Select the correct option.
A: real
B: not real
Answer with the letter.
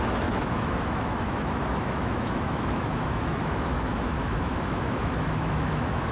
B